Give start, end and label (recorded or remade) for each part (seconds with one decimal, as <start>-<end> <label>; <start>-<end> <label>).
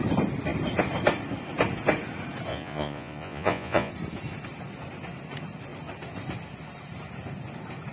0.0-2.5 recorded; 2.5-3.9 remade; 3.9-7.9 recorded